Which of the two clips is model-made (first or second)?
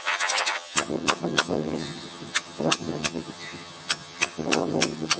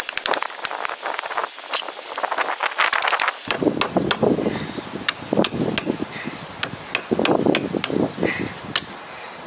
first